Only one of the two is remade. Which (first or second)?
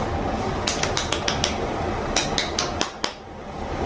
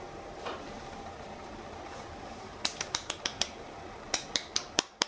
second